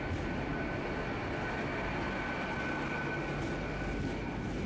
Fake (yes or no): no